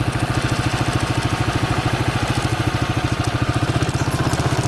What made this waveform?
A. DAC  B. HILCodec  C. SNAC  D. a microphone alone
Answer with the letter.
D